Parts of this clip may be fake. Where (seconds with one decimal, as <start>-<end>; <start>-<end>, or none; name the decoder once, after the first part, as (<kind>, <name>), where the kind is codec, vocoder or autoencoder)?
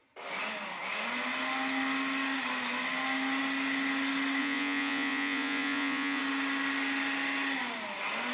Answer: 4.4-6.2 (vocoder, Vocos)